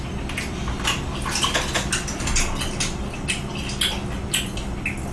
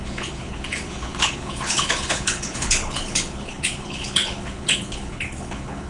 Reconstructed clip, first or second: second